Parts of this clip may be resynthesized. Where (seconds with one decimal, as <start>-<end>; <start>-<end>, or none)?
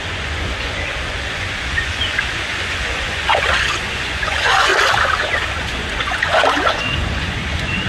0.0-4.7; 5.3-7.9